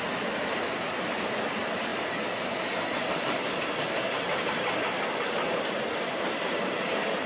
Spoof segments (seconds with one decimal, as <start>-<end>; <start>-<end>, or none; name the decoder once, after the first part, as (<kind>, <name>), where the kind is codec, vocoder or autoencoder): none